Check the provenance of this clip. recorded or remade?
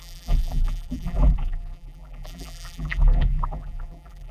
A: remade